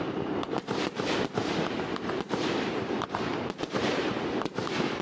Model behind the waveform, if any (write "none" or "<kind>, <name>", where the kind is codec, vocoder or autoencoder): vocoder, BigVGAN v2